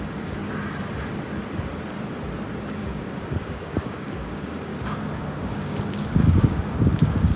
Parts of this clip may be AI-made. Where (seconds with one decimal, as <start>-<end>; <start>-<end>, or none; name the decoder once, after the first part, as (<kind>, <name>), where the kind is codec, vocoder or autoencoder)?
0.0-0.4 (codec, DAC); 2.6-4.7; 5.2-7.4